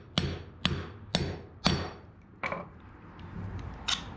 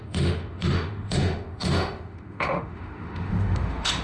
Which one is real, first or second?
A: first